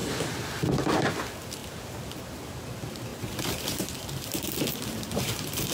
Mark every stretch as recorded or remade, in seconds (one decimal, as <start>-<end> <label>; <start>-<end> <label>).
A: 0.0-3.1 recorded; 3.1-5.7 remade